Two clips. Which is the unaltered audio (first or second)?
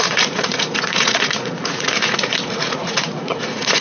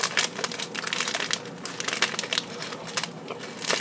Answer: second